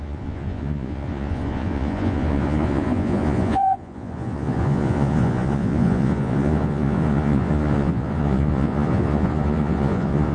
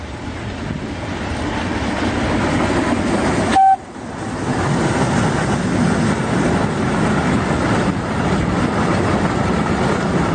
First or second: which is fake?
first